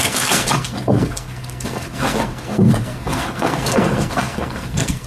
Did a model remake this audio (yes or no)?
yes